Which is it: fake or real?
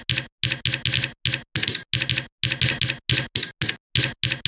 real